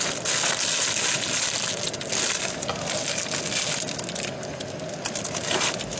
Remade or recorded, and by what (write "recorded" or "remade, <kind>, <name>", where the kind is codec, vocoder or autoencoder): recorded